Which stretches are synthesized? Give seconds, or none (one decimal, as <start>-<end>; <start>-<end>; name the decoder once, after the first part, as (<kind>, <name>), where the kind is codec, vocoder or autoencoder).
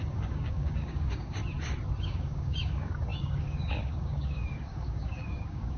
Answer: 0.0-1.4 (codec, DAC); 2.0-5.8